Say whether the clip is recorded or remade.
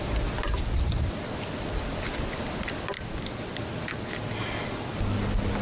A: recorded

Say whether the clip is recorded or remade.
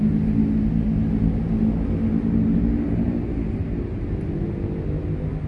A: recorded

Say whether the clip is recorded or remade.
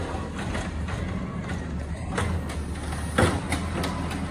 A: recorded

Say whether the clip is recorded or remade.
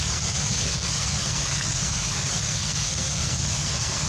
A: remade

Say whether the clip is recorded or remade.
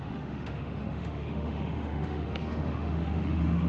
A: remade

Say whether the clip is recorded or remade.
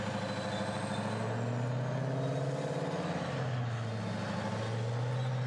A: recorded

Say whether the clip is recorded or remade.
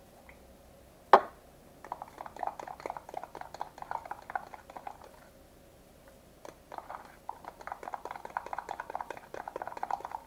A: recorded